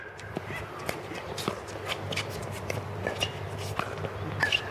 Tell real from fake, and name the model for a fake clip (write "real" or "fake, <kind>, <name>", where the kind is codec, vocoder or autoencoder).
real